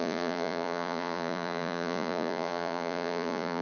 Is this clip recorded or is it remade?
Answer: remade